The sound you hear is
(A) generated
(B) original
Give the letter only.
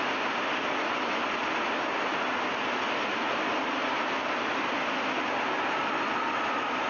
B